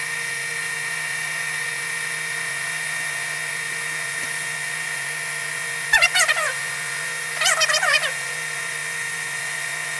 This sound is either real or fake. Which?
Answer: fake